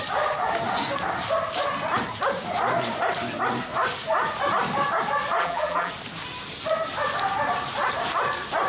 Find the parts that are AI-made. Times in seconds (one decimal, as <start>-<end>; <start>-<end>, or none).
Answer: 5.4-5.9